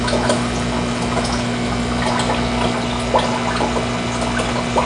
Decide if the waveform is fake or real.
real